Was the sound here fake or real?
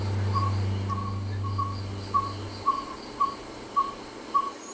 real